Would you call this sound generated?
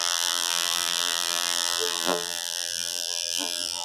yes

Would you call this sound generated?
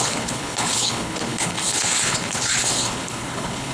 yes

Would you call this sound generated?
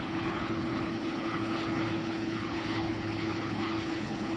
yes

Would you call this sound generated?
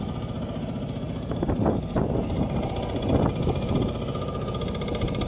yes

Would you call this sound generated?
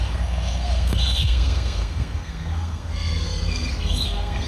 yes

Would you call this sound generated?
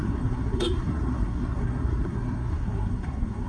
yes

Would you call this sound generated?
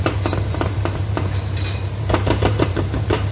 yes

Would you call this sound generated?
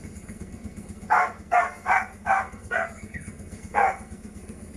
yes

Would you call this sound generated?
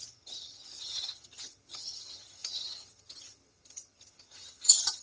yes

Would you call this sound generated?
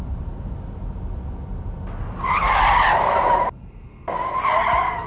no